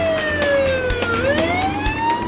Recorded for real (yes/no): yes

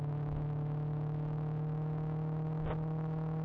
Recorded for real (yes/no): yes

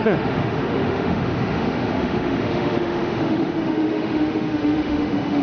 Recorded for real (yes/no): no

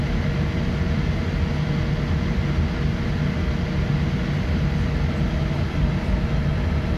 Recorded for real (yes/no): yes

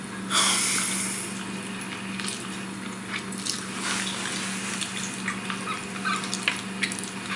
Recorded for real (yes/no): yes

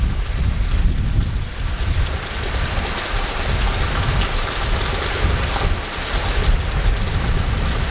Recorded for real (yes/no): yes